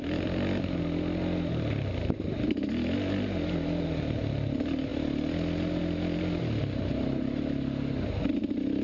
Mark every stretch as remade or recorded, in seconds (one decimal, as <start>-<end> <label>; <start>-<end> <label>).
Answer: 0.0-8.8 recorded